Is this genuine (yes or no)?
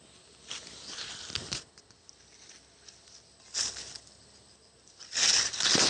yes